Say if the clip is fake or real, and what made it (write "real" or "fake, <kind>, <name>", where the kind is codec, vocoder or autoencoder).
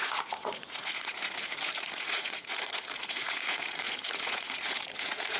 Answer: fake, vocoder, Vocos